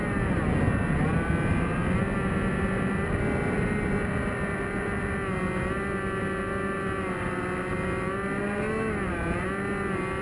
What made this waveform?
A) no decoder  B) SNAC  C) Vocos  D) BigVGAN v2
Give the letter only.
A